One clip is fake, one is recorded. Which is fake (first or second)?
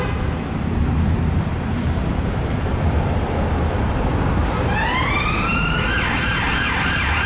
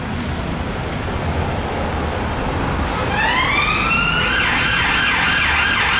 first